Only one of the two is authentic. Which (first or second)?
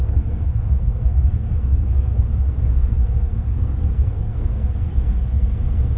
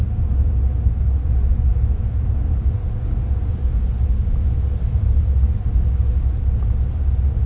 second